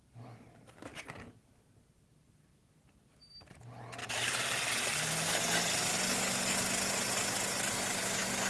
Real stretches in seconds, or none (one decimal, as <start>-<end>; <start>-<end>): 0.0-8.5